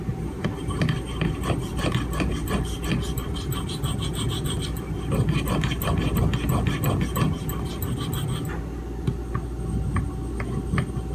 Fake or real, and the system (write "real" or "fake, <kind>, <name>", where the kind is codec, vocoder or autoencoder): real